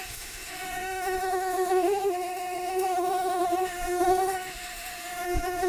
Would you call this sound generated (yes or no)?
yes